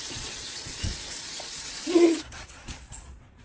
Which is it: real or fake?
fake